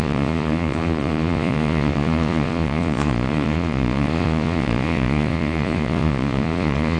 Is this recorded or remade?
remade